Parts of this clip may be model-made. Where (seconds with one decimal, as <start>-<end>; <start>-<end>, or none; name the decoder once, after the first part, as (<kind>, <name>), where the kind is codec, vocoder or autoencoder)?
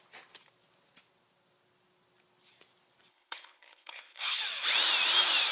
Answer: 3.1-4.4 (codec, HILCodec)